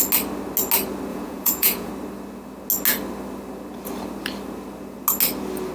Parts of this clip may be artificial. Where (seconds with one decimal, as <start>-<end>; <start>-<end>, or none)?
1.1-1.9

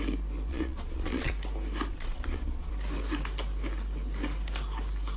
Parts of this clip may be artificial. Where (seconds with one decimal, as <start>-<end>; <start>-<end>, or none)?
0.5-1.3; 1.9-2.7